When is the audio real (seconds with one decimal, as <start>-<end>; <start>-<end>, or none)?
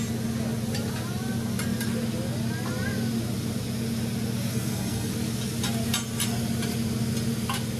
0.0-4.5; 5.1-7.8